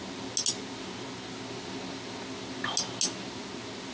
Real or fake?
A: real